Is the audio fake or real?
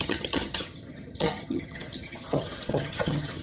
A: fake